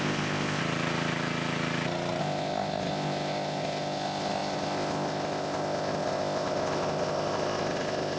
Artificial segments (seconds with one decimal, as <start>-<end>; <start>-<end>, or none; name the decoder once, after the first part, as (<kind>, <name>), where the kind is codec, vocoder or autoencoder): 0.0-0.6 (codec, ZipCodec); 2.2-8.2